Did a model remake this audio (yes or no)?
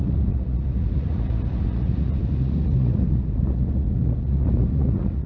yes